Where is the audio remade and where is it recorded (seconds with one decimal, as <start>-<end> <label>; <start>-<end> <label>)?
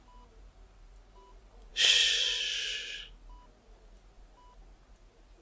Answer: 0.0-5.4 recorded